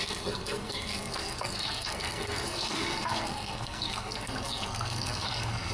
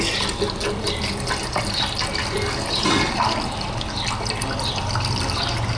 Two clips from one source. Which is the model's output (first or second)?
first